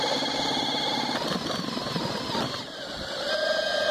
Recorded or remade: recorded